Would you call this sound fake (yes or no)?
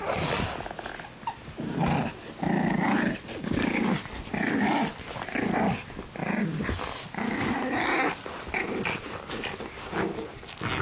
no